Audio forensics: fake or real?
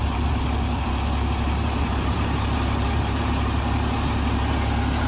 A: fake